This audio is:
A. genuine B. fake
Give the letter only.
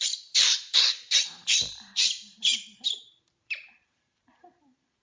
B